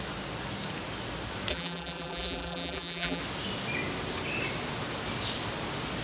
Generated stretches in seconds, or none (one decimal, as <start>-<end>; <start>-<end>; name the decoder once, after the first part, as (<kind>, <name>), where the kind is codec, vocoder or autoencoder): 1.5-3.2 (vocoder, BigVGAN v2)